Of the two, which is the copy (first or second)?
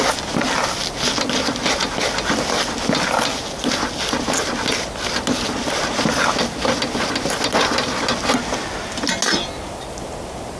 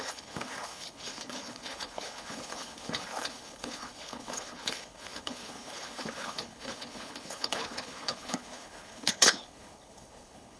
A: second